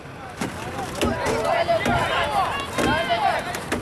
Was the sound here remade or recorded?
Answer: recorded